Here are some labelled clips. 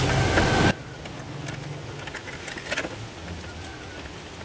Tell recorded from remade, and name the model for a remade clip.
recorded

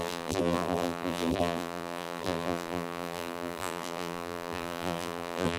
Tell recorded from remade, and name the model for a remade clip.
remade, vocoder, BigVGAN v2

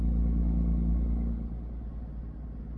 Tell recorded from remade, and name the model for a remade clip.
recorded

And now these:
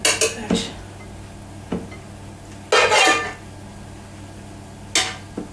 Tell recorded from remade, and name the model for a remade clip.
recorded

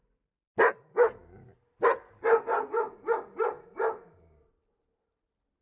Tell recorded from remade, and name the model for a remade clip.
recorded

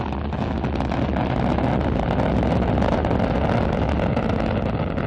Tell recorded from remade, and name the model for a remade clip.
recorded